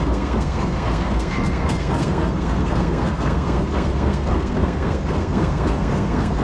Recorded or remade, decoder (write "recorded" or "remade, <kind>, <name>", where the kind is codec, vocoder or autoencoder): remade, codec, SNAC